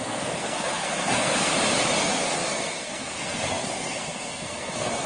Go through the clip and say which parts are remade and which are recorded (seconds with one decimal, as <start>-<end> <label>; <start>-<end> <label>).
0.0-1.5 remade; 1.5-2.0 recorded; 2.0-5.1 remade